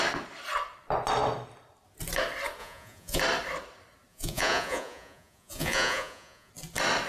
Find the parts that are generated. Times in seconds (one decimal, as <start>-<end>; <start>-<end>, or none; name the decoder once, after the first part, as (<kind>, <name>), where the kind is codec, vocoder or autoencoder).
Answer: 2.6-3.2 (vocoder, Vocos); 4.1-6.5